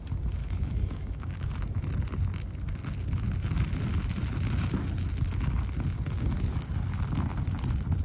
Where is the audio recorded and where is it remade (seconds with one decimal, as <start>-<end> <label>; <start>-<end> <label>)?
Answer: 0.0-0.4 recorded; 0.4-1.5 remade; 1.5-8.0 recorded